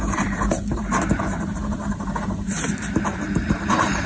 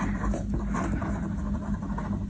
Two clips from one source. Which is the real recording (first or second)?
second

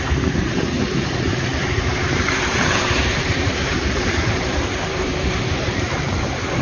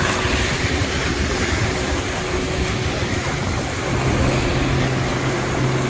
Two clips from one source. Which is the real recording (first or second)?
second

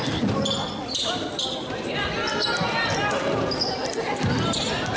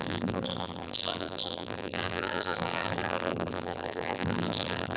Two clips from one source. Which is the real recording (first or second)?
first